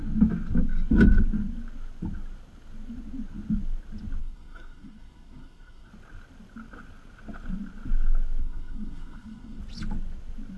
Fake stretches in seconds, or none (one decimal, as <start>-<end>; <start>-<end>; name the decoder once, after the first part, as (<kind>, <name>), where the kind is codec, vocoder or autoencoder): 4.2-5.9 (codec, SNAC); 8.4-9.6